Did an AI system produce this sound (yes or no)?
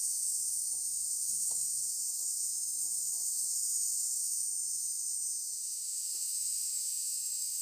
yes